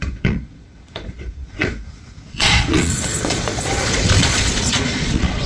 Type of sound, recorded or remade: remade